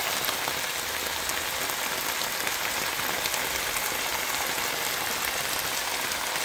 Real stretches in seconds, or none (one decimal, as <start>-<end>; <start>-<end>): 0.0-6.4